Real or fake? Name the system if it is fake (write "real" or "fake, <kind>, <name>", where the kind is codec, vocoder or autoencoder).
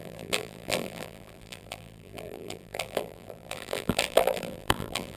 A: fake, vocoder, BigVGAN v2